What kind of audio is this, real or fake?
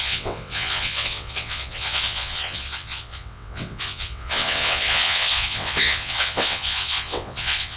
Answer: fake